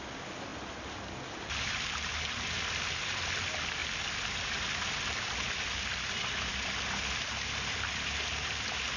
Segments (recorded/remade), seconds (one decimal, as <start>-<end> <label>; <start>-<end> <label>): 0.0-9.0 recorded